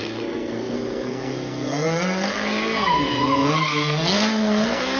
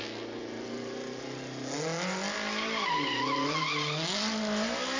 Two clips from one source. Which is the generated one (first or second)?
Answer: first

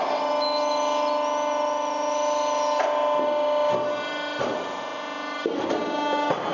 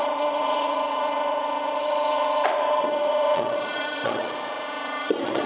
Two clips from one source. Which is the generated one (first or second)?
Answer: second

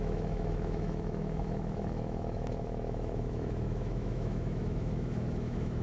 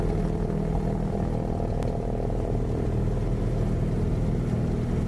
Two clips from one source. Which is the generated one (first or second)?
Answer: first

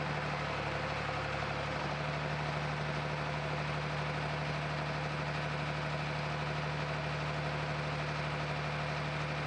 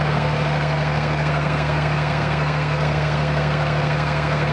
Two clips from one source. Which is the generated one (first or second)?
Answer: second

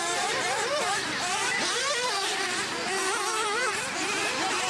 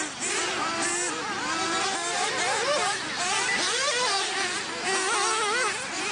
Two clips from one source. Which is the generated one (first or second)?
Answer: first